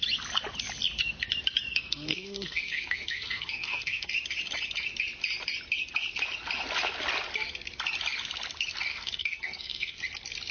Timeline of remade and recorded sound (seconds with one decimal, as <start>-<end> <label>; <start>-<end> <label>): 0.0-1.7 recorded; 1.7-4.1 remade; 4.1-8.9 recorded; 8.9-10.0 remade; 10.0-10.5 recorded